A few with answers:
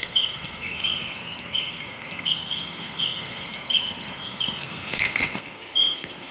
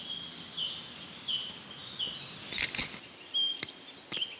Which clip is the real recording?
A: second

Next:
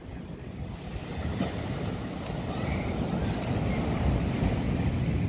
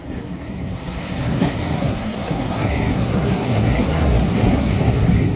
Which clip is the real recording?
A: first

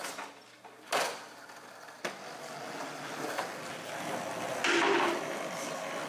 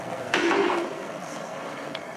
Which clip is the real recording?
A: first